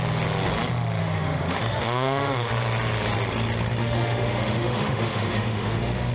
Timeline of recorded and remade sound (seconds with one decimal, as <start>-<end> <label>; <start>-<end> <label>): 0.0-1.0 recorded; 1.0-2.5 remade; 2.5-3.8 recorded; 3.8-6.1 remade